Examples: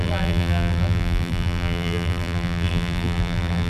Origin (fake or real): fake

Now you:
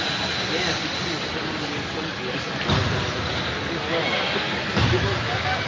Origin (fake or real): real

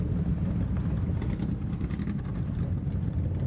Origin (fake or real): real